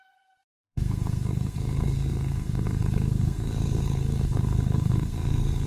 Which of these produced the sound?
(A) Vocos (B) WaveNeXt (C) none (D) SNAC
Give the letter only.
D